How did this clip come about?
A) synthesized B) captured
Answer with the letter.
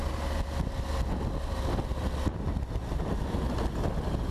B